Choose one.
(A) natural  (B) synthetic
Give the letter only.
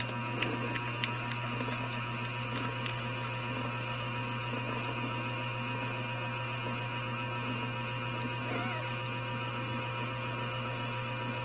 A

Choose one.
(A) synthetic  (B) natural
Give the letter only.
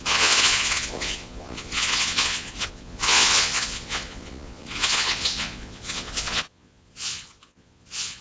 A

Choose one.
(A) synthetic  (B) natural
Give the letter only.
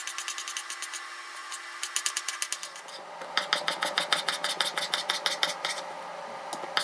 B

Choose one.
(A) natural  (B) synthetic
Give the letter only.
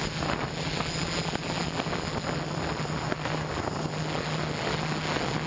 A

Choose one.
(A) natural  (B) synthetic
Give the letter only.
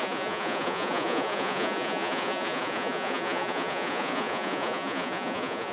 B